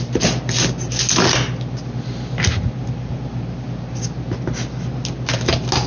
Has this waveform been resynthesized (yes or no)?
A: no